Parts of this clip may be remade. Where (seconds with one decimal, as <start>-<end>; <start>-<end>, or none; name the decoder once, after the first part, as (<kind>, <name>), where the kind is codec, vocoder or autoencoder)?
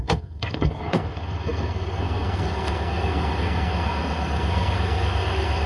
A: 0.0-5.7 (codec, SNAC)